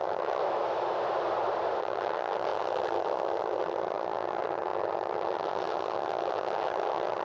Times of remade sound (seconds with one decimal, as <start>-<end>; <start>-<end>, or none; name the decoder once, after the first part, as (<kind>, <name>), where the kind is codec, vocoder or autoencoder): 0.0-0.4 (vocoder, HiFi-GAN); 1.8-7.2